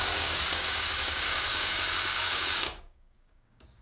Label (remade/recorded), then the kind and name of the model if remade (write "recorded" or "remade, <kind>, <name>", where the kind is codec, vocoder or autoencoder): remade, codec, DAC